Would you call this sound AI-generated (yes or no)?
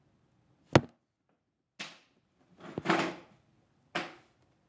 no